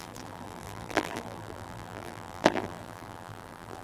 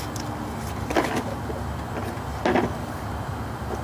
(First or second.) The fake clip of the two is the first